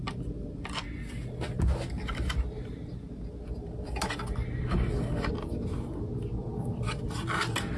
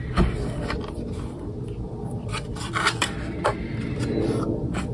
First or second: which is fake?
second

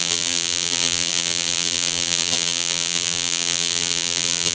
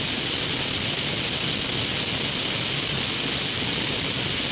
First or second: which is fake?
first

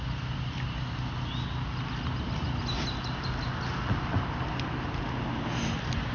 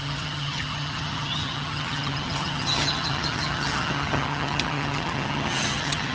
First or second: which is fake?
second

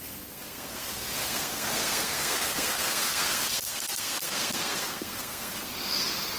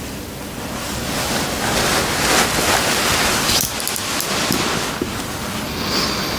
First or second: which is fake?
first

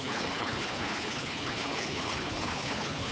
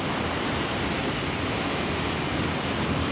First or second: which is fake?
first